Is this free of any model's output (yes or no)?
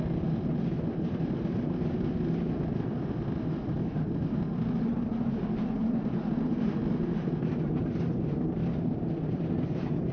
yes